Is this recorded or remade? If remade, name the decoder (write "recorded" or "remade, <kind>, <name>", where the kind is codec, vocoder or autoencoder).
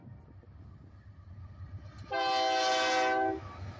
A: recorded